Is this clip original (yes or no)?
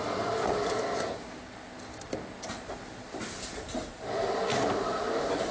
yes